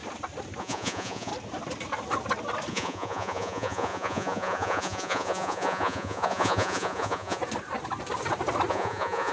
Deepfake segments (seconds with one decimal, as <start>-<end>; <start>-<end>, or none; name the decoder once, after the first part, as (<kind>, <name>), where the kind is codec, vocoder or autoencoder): 0.6-1.3 (vocoder, Vocos); 2.7-7.4; 8.7-9.3